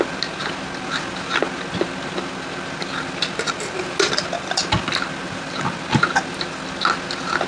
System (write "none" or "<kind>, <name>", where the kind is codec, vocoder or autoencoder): none